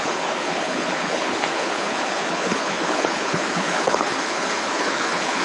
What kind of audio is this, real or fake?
fake